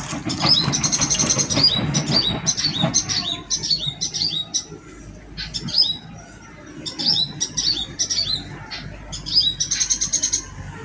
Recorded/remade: recorded